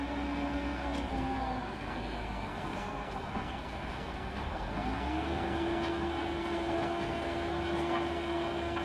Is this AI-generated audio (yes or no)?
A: yes